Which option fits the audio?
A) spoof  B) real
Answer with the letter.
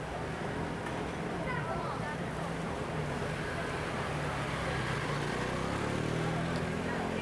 B